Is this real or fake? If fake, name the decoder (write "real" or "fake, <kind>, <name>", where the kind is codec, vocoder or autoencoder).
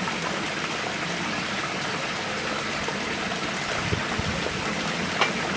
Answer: real